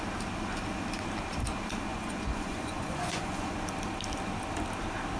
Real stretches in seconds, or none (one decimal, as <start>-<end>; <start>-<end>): 0.0-1.9; 3.6-5.2